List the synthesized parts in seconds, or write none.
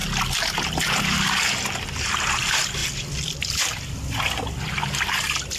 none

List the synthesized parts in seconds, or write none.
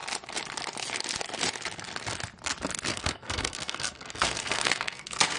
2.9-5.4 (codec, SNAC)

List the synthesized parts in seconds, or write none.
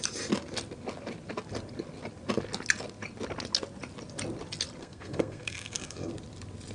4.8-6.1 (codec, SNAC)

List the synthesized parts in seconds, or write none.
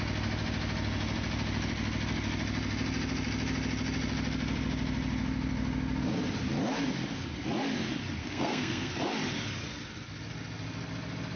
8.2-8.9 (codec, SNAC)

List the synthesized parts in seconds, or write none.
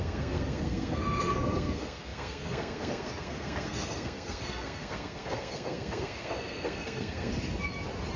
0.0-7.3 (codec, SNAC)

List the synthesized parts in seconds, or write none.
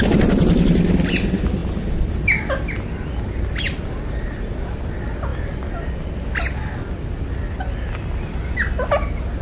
none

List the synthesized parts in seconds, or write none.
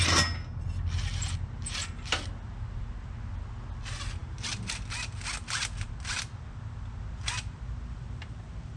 none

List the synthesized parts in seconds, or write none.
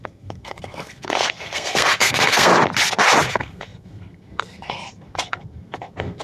0.0-2.5 (codec, SNAC); 3.3-6.2